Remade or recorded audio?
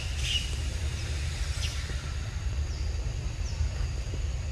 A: remade